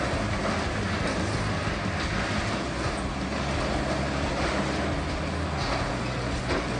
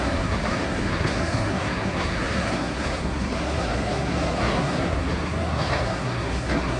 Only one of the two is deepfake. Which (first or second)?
second